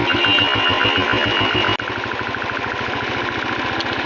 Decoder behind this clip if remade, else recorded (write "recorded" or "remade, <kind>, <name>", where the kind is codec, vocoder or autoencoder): recorded